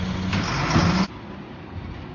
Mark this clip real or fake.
real